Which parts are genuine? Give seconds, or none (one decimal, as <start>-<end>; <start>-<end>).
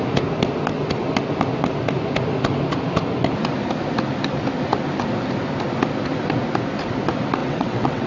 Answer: 0.0-7.4